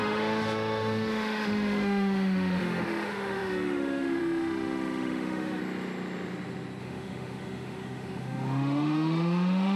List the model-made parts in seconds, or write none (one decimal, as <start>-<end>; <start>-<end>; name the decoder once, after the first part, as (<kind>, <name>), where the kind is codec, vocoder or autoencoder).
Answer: 0.0-5.6 (autoencoder, DAC-VAE); 6.8-9.8